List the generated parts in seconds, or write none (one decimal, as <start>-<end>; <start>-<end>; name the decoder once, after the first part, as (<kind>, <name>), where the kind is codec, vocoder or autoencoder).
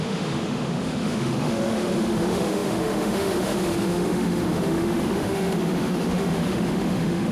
0.0-7.3 (autoencoder, DAC-VAE)